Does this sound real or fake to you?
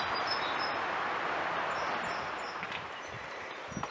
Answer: real